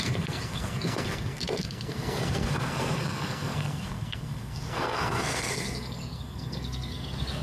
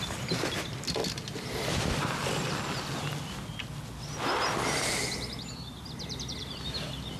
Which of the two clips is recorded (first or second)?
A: second